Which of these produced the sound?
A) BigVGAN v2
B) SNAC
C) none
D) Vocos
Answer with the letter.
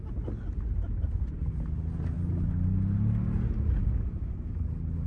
C